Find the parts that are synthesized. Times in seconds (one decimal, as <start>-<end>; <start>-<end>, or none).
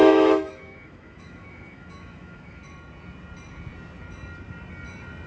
0.0-2.6